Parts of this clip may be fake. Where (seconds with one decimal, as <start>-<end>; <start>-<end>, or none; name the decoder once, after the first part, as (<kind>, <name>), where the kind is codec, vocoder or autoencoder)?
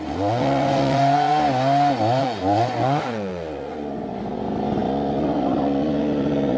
0.0-1.3 (vocoder, Vocos); 2.2-6.6